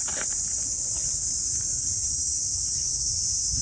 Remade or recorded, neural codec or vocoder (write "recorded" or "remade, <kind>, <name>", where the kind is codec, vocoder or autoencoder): recorded